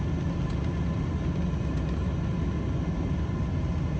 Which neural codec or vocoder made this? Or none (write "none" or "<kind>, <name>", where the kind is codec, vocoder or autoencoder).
none